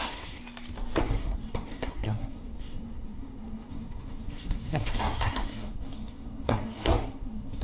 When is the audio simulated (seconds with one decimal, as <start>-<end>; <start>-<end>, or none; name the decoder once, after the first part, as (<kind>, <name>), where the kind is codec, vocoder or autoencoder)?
0.0-0.4 (codec, SNAC); 1.0-7.6